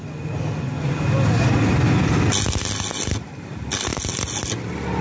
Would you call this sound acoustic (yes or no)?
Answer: yes